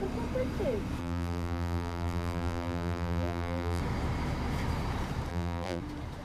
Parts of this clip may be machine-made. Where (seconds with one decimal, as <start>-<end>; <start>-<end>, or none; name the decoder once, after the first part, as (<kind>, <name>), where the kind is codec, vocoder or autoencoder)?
1.0-3.8 (vocoder, BigVGAN v2); 5.3-5.8